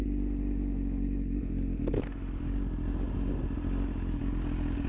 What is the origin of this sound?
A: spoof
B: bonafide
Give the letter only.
B